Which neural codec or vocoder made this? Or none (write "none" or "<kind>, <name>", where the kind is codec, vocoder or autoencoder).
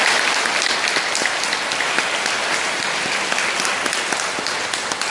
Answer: none